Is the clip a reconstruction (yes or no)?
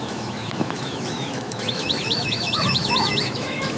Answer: yes